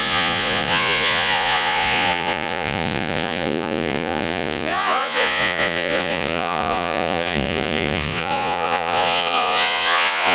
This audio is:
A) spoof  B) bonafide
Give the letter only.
A